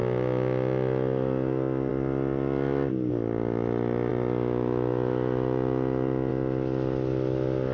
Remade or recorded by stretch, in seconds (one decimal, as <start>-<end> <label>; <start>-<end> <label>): 0.0-7.7 recorded